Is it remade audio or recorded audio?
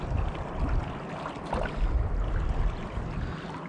recorded